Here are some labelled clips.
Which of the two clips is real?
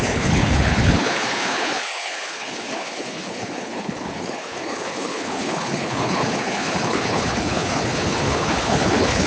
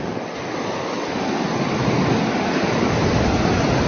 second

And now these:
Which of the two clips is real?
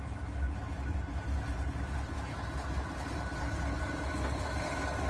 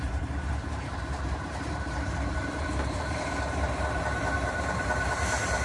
first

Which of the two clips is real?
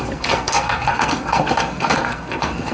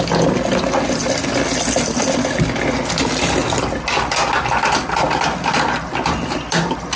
second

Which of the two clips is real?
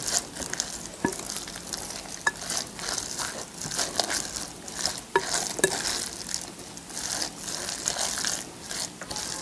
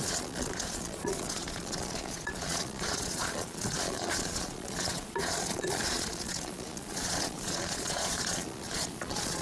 first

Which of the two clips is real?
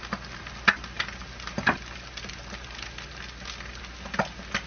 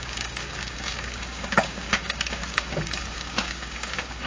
first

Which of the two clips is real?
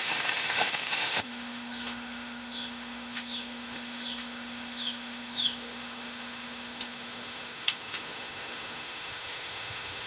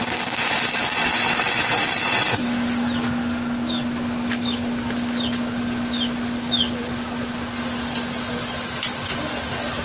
second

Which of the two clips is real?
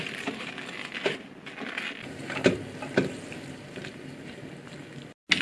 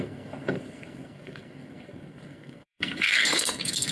first